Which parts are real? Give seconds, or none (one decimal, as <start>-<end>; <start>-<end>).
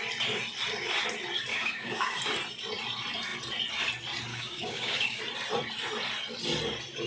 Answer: 0.0-1.5; 2.2-4.3; 5.2-7.1